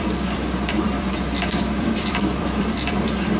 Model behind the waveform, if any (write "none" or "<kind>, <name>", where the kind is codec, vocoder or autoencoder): vocoder, BigVGAN v2